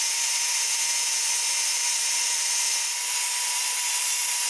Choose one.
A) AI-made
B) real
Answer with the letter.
B